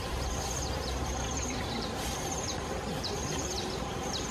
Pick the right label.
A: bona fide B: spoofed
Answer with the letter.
B